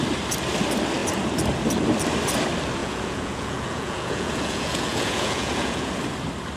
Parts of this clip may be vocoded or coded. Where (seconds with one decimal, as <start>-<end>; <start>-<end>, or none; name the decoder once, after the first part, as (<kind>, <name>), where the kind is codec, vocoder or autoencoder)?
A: 2.8-5.9 (vocoder, Vocos)